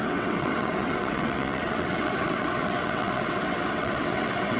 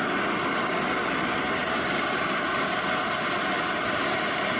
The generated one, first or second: first